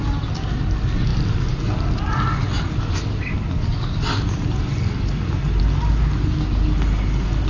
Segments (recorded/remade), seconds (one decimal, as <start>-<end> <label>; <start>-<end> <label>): 0.0-7.5 recorded